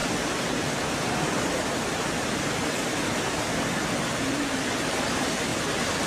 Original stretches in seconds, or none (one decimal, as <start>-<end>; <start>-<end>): 3.7-5.5